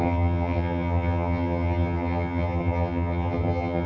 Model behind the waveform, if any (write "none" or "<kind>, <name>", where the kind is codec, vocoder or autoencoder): vocoder, HiFi-GAN